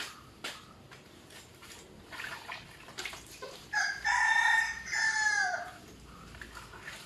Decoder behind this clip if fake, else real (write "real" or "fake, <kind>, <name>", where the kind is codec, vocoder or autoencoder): fake, vocoder, BigVGAN v2